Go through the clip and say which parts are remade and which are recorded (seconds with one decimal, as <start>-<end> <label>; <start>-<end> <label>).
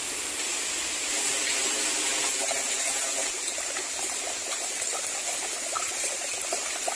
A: 0.0-7.0 recorded